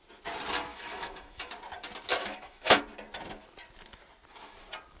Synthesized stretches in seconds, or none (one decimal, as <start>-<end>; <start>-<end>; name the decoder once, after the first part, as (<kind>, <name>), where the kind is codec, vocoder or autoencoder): 0.7-1.5 (autoencoder, DAC-VAE); 2.2-2.8

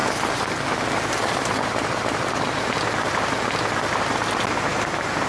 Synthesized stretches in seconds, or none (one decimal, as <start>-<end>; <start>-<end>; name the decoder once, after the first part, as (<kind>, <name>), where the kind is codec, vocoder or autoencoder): none